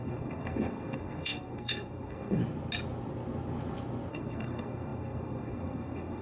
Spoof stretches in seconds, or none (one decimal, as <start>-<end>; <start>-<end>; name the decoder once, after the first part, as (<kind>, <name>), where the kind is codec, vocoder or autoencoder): 0.0-2.4 (codec, SNAC); 4.1-6.2